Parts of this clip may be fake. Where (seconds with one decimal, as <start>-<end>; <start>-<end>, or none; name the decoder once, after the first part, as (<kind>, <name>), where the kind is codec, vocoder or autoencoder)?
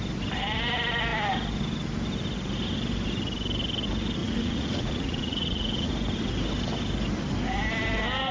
4.2-5.9 (vocoder, Vocos)